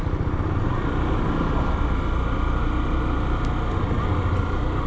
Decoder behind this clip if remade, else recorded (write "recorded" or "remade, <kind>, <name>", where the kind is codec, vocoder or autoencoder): recorded